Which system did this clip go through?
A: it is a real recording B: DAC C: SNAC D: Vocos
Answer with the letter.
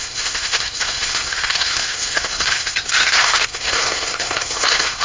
C